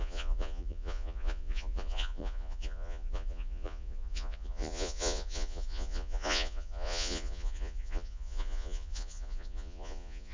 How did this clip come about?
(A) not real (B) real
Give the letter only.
A